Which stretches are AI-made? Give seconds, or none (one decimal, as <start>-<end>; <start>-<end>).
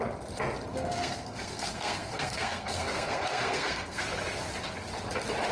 0.7-4.0